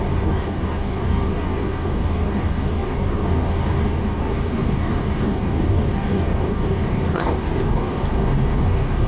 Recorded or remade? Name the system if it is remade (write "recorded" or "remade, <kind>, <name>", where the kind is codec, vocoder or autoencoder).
remade, codec, DAC